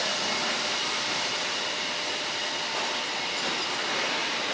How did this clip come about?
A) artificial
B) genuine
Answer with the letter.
B